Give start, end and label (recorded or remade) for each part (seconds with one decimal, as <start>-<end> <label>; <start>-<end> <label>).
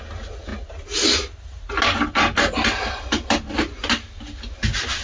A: 0.0-5.0 recorded